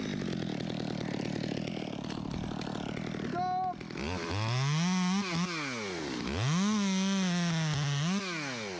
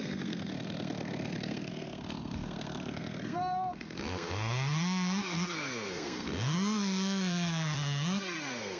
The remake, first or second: second